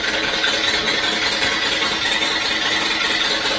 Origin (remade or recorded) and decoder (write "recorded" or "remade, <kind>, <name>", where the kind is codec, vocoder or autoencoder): recorded